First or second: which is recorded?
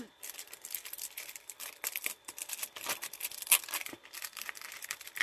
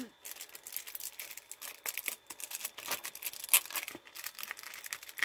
second